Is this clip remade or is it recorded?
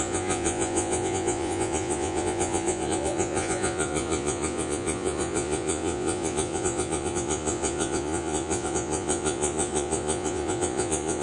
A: remade